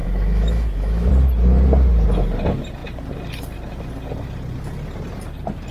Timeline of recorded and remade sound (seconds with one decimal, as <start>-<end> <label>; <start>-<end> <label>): 0.0-1.1 remade; 1.1-5.7 recorded